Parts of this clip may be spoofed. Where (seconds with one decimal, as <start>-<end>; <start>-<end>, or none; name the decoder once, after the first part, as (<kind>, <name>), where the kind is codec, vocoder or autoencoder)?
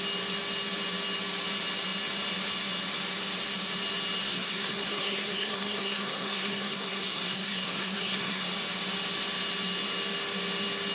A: 4.2-8.4 (codec, SNAC)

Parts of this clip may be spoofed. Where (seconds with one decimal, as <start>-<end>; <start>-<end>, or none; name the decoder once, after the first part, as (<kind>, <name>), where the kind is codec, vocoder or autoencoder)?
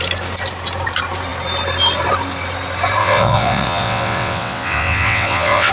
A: 3.0-5.7 (vocoder, WaveNeXt)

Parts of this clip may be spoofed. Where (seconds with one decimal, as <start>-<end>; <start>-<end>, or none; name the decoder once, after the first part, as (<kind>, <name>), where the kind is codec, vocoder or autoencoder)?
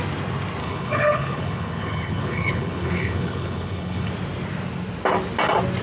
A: 0.6-4.1 (codec, HILCodec)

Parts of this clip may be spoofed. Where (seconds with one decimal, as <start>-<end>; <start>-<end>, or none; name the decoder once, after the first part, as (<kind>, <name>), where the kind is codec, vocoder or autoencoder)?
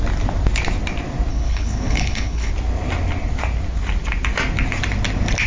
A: 1.3-2.5 (codec, HILCodec)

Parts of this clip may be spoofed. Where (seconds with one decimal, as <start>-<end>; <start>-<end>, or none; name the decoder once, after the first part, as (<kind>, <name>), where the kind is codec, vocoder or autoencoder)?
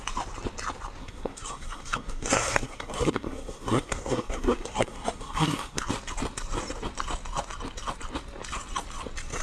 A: 1.0-5.9 (codec, SNAC)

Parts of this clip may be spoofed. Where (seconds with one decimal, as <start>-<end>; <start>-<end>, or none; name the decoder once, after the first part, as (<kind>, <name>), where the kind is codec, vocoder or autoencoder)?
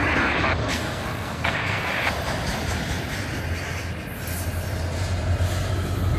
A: 0.6-1.9 (codec, SNAC)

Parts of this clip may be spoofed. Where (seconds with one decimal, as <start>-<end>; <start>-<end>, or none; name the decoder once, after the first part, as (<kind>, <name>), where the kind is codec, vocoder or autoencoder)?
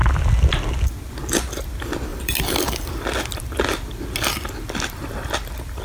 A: 2.1-3.4 (vocoder, BigVGAN v2)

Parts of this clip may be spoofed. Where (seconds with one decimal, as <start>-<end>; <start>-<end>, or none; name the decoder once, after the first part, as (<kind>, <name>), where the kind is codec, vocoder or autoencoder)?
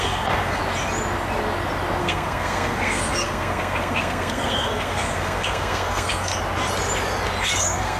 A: 0.0-0.6 (codec, SNAC); 2.0-6.3; 7.6-8.0